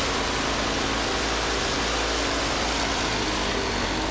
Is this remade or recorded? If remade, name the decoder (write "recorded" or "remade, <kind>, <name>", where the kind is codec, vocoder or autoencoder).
recorded